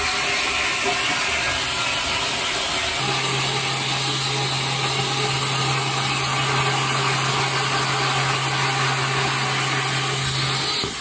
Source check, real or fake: real